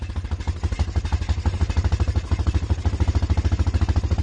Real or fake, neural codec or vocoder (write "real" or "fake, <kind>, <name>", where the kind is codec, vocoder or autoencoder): real